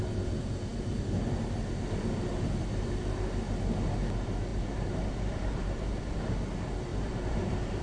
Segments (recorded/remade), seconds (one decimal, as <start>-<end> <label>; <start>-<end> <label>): 0.0-4.5 recorded; 4.5-6.2 remade; 6.2-6.9 recorded; 6.9-7.8 remade